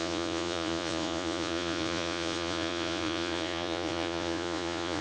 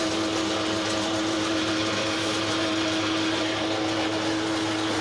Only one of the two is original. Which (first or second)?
second